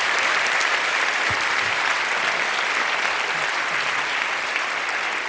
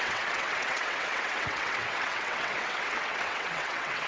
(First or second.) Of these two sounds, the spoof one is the second